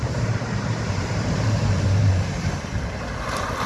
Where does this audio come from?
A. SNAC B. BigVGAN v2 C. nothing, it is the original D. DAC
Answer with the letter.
B